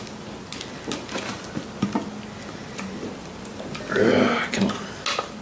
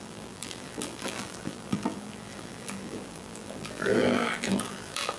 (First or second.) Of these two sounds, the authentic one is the first